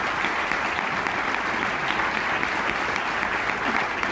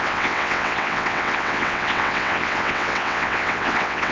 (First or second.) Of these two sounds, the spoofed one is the second